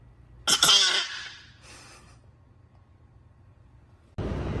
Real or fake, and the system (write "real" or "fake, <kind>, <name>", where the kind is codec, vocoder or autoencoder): real